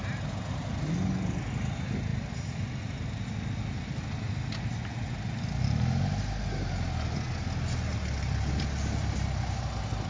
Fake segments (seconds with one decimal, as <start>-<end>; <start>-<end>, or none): none